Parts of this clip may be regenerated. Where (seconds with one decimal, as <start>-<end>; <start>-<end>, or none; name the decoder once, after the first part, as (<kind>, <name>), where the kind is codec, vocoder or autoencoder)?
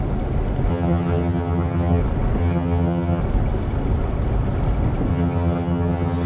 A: 0.7-2.0 (vocoder, HiFi-GAN); 2.4-3.2; 5.1-6.3